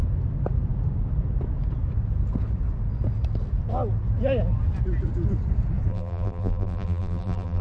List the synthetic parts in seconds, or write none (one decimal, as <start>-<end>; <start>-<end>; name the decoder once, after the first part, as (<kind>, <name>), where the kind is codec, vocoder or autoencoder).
5.9-7.6 (vocoder, BigVGAN v2)

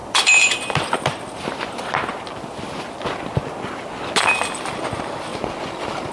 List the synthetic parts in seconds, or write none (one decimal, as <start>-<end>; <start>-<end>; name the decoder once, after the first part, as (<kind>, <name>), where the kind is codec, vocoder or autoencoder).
5.3-6.1 (vocoder, BigVGAN v2)